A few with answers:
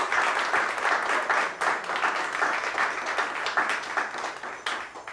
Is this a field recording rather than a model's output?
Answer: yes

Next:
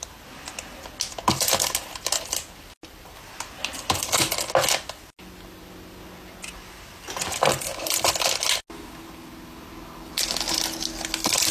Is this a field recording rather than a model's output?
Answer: yes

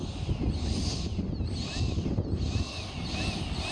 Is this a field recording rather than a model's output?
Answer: yes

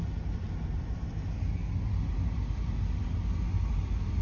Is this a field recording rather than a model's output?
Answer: yes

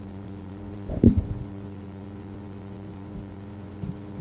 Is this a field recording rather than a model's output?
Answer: no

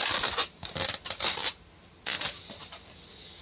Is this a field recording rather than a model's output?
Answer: yes